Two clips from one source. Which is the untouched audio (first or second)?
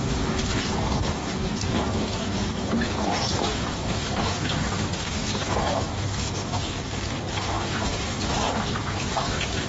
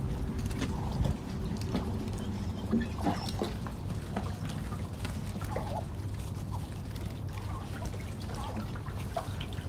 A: second